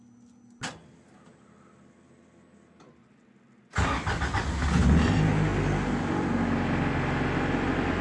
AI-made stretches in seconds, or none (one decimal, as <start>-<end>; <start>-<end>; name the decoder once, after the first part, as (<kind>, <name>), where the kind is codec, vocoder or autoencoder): none